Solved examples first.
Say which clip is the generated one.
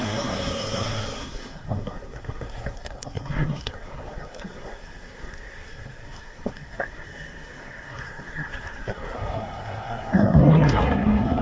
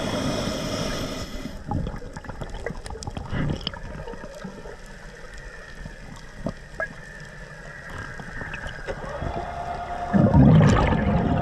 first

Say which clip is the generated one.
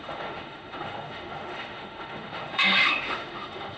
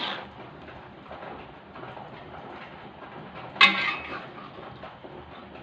first